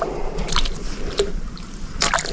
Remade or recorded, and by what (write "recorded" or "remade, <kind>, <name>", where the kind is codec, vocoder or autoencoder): remade, vocoder, BigVGAN v2